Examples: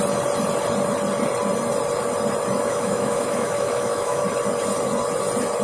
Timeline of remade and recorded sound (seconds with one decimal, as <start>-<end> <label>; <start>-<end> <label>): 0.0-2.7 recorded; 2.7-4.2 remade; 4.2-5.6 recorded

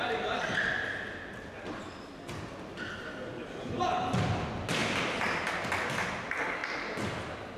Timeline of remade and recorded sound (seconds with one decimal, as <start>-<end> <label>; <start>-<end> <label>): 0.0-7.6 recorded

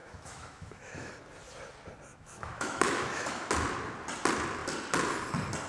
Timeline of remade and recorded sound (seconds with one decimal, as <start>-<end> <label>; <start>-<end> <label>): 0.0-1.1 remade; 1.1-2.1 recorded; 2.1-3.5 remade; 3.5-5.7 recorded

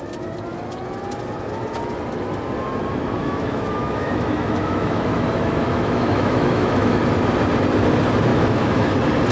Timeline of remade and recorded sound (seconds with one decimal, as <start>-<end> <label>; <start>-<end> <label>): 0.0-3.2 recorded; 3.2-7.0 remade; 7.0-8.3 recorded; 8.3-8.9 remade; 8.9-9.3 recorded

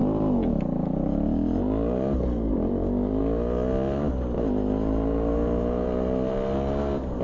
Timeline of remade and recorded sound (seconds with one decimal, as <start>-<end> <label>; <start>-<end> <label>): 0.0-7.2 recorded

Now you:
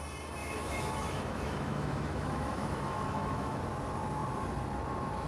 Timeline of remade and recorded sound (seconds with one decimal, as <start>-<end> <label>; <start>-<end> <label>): 0.0-0.4 recorded; 0.4-3.6 remade; 3.6-5.3 recorded

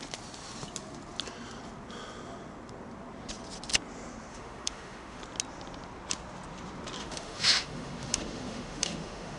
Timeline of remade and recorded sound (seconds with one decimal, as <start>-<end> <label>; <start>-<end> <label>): 0.0-4.3 recorded; 4.3-5.2 remade; 5.2-7.0 recorded; 7.0-9.4 remade

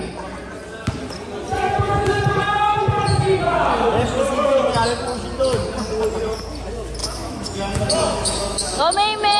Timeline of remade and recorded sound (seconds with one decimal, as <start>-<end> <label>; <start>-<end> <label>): 0.0-7.0 recorded; 7.0-8.8 remade; 8.8-9.4 recorded